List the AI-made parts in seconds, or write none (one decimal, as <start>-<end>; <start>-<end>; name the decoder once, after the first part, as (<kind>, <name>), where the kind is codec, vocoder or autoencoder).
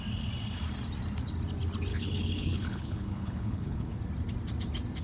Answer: 1.9-4.0 (codec, HILCodec)